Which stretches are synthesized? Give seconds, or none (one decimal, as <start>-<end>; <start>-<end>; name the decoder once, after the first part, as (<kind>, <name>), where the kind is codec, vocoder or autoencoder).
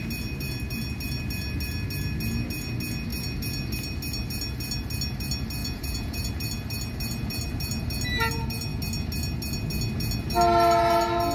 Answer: 5.6-6.3 (vocoder, Vocos)